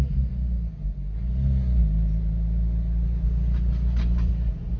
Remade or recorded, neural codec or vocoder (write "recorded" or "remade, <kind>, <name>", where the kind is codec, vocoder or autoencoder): recorded